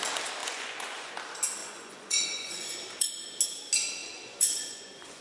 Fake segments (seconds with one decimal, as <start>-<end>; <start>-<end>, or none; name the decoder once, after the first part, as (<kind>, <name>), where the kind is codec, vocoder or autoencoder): 0.4-1.1 (vocoder, Vocos); 1.6-3.1; 4.0-5.2